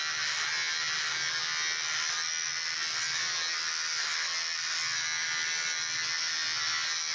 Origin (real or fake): real